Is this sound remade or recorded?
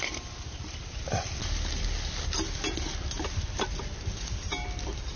recorded